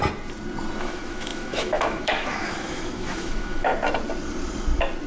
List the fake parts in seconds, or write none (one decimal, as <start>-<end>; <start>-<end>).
0.8-3.7